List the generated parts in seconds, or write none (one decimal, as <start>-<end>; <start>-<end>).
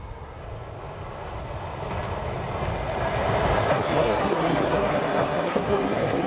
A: 0.0-0.4; 3.7-6.3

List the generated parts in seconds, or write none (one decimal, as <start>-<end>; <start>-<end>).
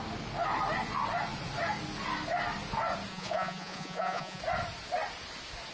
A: 3.1-4.4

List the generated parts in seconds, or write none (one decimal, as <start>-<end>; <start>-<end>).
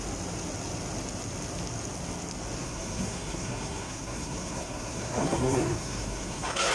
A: 2.6-6.7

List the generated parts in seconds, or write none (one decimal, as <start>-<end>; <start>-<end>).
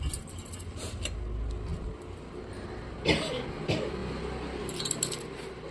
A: none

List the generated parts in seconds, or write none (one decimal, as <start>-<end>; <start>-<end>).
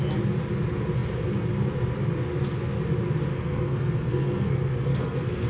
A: 3.3-5.5